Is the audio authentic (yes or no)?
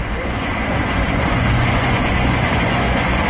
no